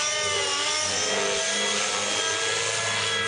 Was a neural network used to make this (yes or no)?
no